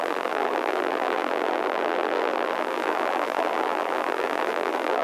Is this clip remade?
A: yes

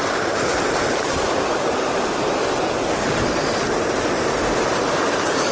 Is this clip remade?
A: yes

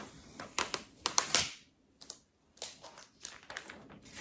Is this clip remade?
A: no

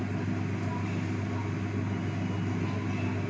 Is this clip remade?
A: no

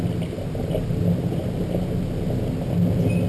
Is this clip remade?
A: no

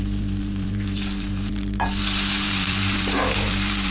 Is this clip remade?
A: yes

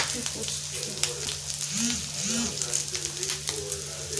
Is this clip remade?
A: no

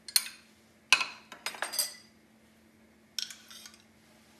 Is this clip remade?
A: no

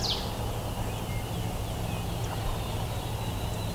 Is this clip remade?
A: no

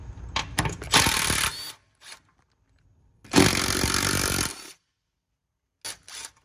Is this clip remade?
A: no